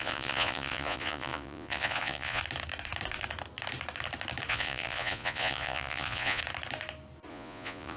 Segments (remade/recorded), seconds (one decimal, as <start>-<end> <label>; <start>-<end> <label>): 0.0-2.4 remade; 2.4-4.5 recorded; 4.5-6.4 remade; 6.4-7.3 recorded; 7.3-8.0 remade